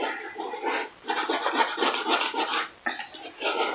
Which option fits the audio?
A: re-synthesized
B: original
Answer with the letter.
B